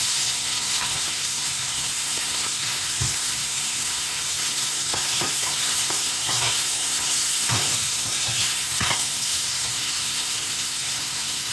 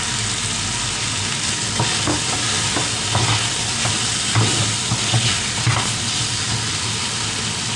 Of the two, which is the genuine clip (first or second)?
second